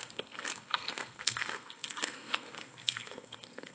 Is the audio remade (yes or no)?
yes